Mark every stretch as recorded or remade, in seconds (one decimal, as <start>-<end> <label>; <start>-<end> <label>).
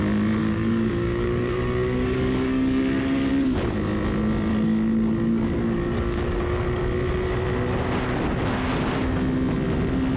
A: 0.0-0.4 recorded; 0.4-3.3 remade; 3.3-4.5 recorded; 4.5-6.8 remade; 6.8-10.2 recorded